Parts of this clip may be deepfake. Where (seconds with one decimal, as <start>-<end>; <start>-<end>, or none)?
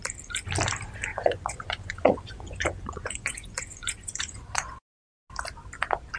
1.1-4.8